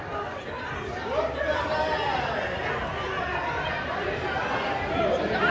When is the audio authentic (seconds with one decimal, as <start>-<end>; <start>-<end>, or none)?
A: 0.0-5.5